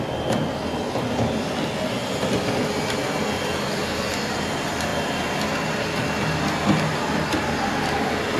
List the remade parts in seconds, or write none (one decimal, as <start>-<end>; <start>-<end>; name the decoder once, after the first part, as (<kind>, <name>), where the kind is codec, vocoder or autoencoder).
none